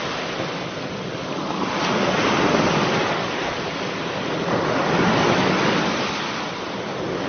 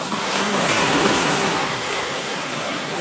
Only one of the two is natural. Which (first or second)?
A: first